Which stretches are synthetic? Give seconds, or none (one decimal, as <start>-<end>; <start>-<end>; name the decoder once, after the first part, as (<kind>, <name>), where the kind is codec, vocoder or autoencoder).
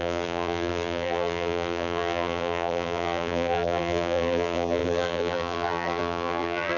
0.0-6.8 (vocoder, BigVGAN v2)